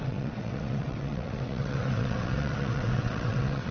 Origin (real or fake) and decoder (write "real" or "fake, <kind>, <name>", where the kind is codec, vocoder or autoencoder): fake, vocoder, WaveNeXt